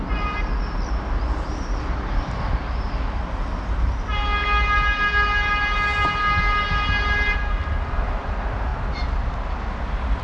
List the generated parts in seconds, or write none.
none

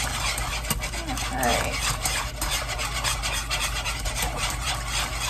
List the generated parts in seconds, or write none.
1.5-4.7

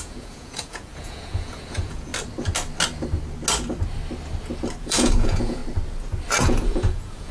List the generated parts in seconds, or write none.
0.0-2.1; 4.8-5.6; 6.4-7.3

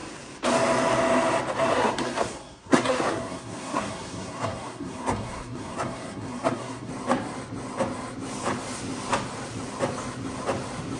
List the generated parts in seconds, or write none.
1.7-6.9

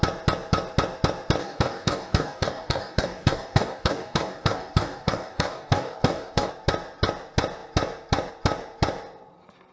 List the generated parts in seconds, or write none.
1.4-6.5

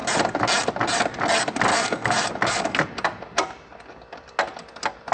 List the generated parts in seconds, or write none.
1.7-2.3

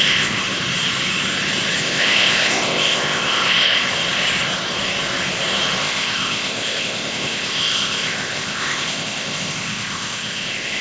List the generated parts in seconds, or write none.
0.0-0.4; 1.8-3.8; 5.8-10.8

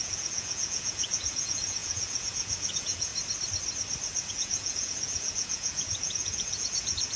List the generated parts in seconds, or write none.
0.0-3.1; 4.3-7.2